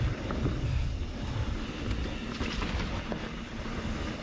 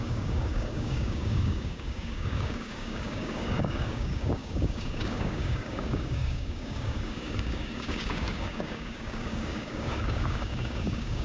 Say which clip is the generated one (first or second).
second